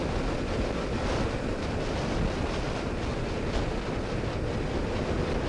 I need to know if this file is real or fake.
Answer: real